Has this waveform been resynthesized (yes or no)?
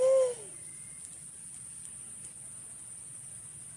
no